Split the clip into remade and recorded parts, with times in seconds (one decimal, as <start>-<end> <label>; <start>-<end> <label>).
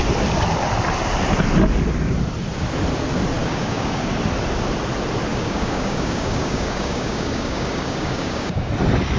0.0-3.4 recorded; 3.4-4.1 remade; 4.1-5.3 recorded; 5.3-8.7 remade; 8.7-9.2 recorded